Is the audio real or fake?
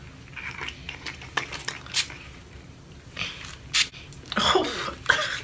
real